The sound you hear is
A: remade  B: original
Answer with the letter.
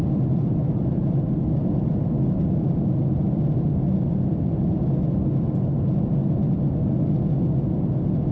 B